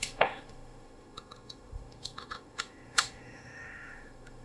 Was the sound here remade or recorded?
remade